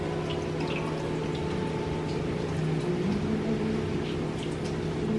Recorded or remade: recorded